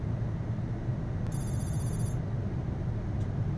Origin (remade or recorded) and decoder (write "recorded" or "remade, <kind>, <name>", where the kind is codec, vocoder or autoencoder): recorded